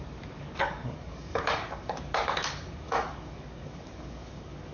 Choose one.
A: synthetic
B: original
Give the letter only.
A